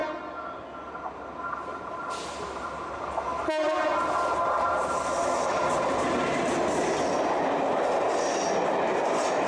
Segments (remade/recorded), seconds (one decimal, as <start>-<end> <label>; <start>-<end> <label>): 0.0-9.5 recorded